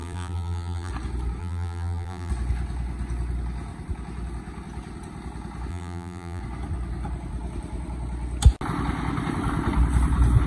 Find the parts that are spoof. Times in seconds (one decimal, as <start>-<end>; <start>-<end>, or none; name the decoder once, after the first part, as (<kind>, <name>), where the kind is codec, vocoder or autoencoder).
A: 0.0-0.9 (vocoder, BigVGAN v2); 1.4-2.3; 5.7-6.4

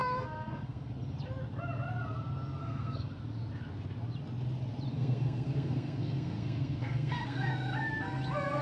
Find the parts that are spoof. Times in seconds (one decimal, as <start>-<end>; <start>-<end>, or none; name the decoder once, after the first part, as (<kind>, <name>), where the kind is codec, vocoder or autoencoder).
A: 0.0-0.9 (codec, SNAC); 2.6-3.2; 4.9-7.5